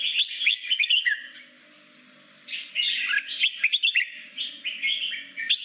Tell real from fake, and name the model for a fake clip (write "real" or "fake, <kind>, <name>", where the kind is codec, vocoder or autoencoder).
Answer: real